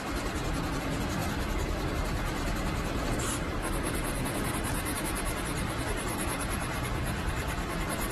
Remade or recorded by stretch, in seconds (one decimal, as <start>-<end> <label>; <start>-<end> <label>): 0.0-8.1 recorded